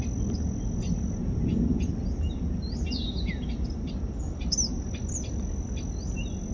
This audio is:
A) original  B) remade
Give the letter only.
A